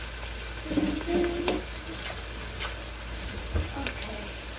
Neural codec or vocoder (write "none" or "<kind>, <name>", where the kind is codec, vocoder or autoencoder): none